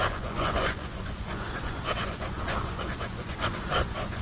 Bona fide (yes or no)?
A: no